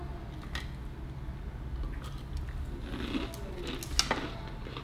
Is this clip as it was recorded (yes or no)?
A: yes